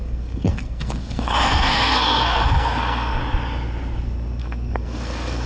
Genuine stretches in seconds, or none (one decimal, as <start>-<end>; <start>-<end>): 3.2-4.4